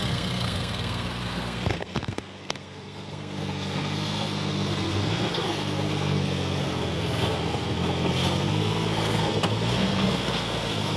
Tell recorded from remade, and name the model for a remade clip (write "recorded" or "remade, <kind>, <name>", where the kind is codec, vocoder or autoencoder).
remade, codec, SNAC